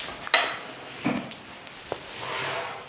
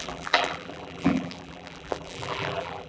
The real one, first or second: first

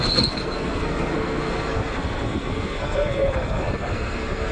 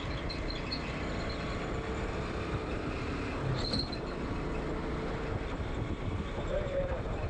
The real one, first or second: second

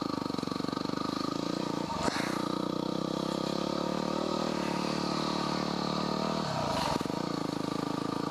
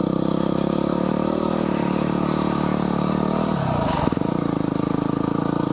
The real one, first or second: first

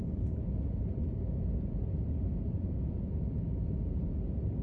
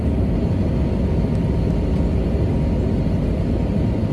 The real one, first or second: second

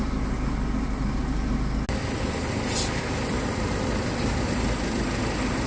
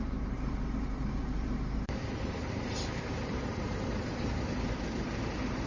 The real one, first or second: first